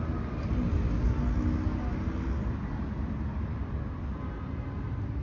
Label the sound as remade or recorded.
recorded